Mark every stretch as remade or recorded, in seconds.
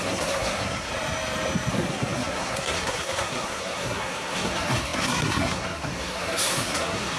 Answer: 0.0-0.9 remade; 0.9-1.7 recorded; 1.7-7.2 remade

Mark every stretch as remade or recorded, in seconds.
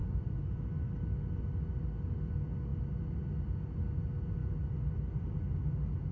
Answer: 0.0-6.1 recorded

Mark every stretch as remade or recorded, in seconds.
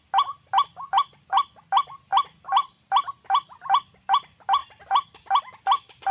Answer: 0.0-6.1 recorded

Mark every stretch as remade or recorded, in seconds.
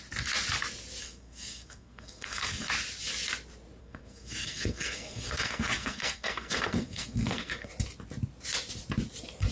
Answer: 0.0-1.0 recorded; 1.0-2.7 remade; 2.7-3.8 recorded; 3.8-7.7 remade; 7.7-9.5 recorded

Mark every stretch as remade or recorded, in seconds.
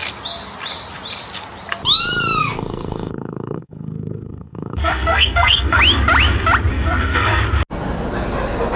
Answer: 0.0-2.4 recorded; 2.4-5.8 remade; 5.8-6.7 recorded; 6.7-7.4 remade; 7.4-8.8 recorded